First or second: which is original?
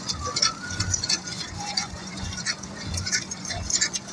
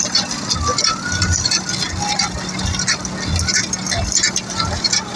second